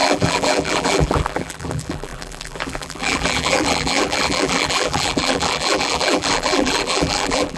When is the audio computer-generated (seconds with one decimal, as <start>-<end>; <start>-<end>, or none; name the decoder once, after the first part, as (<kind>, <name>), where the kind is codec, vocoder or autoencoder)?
0.0-7.6 (vocoder, BigVGAN v2)